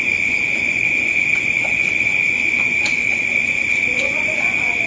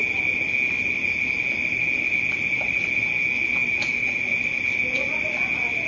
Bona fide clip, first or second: second